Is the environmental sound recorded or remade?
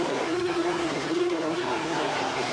remade